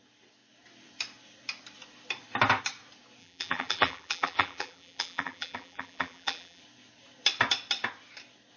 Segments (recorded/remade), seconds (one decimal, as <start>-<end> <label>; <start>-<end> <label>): 0.0-3.2 recorded; 3.2-6.6 remade; 6.6-8.6 recorded